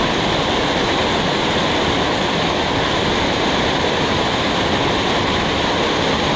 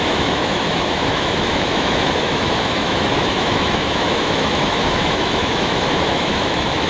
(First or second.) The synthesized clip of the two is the second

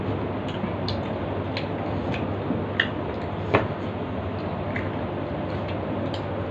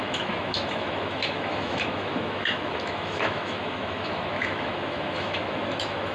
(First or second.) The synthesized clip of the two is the second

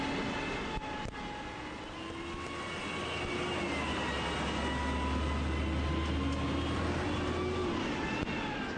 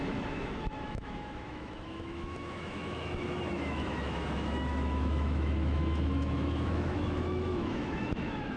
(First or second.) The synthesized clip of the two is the second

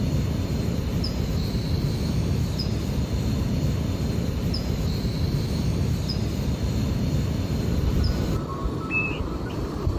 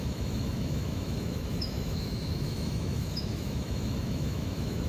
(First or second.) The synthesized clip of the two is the second